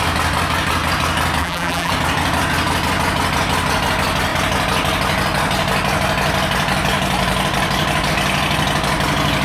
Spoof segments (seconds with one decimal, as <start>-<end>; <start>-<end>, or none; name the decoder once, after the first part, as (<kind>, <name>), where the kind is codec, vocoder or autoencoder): 1.4-1.9 (vocoder, BigVGAN v2)